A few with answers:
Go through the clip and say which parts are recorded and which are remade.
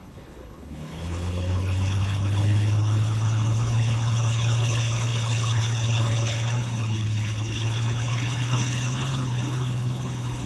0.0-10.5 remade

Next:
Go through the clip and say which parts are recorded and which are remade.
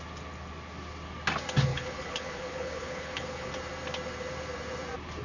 0.0-1.7 recorded; 1.7-3.5 remade; 3.5-5.2 recorded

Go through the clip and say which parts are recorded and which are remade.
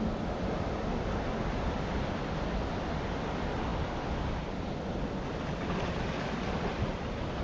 0.0-7.4 recorded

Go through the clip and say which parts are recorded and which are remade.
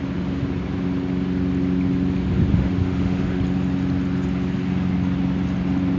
0.0-2.5 recorded; 2.5-3.4 remade; 3.4-6.0 recorded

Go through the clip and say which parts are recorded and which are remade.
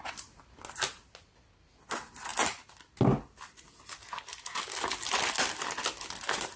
0.0-6.6 recorded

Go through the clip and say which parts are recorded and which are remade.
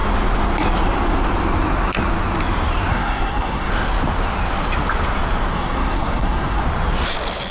0.0-2.9 recorded; 2.9-3.7 remade; 3.7-5.5 recorded; 5.5-6.6 remade; 6.6-7.5 recorded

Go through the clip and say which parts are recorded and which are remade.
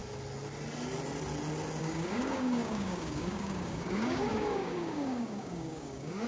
0.0-1.8 recorded; 1.8-6.3 remade